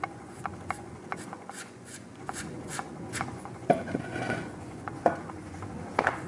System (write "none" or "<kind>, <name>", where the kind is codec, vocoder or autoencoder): vocoder, Vocos